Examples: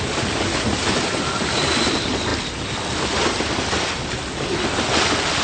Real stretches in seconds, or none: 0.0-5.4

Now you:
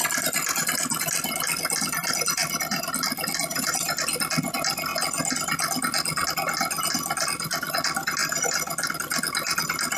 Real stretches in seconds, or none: 0.0-10.0

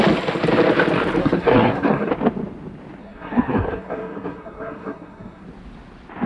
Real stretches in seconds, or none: 0.0-1.2; 2.1-3.0; 5.4-6.3

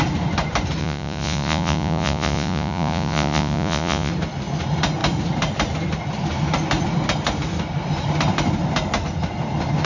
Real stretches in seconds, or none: 0.0-0.8; 4.1-9.8

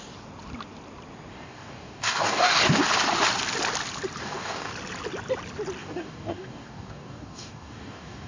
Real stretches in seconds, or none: 0.0-1.3; 2.6-4.2; 4.7-5.8

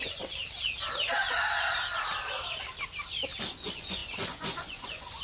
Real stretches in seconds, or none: 0.4-3.5